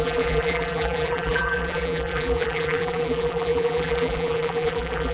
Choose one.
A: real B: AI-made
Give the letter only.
B